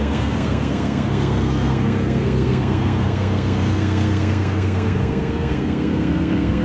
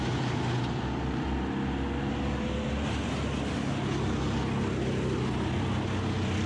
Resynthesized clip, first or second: first